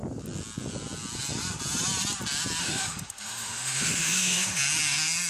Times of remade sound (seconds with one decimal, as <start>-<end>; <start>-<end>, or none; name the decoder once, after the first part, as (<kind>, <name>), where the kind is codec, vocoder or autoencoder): 2.6-4.6 (autoencoder, DAC-VAE)